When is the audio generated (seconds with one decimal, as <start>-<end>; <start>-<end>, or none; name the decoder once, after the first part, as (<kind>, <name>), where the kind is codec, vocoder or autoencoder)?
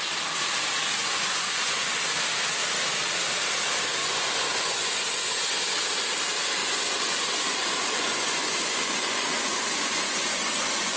1.0-2.0 (vocoder, Vocos); 4.0-5.6; 6.6-11.0